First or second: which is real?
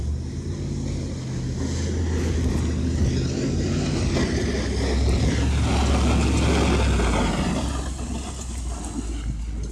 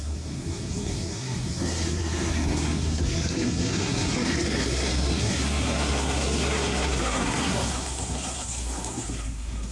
first